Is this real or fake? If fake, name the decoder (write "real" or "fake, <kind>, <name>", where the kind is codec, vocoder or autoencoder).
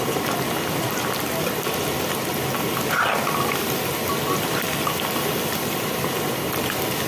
real